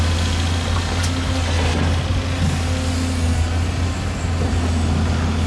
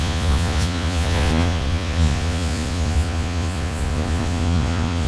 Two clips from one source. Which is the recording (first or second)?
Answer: first